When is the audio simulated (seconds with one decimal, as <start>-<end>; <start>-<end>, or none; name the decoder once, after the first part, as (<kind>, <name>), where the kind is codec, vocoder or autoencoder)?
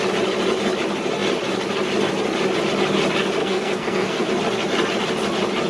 3.4-4.3 (codec, SNAC)